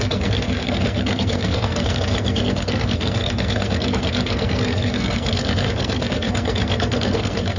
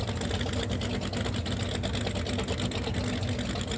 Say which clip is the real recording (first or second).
second